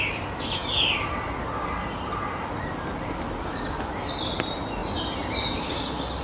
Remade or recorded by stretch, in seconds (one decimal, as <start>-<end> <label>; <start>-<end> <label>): 0.0-6.2 recorded